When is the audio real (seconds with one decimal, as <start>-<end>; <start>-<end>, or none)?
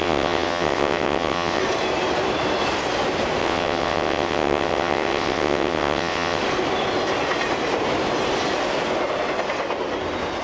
1.6-3.4; 6.4-10.4